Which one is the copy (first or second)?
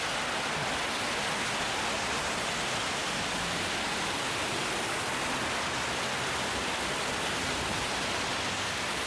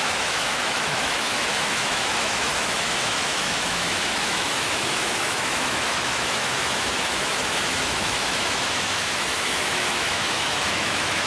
second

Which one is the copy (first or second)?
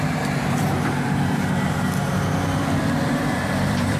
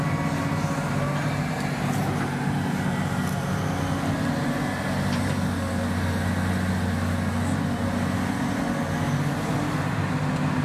first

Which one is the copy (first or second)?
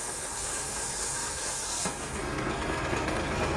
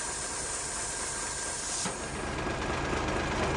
first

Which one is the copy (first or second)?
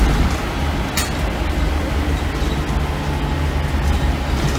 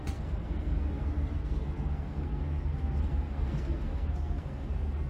second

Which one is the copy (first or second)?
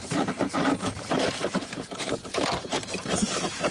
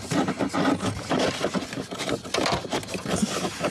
first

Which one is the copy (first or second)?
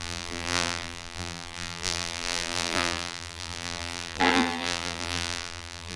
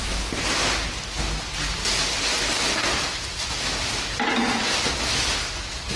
first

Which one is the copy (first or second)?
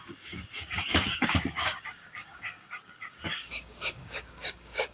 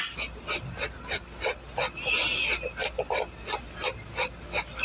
first